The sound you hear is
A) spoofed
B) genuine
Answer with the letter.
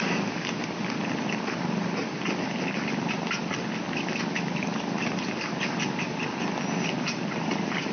B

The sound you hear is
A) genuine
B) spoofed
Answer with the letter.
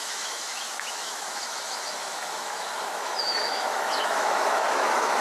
B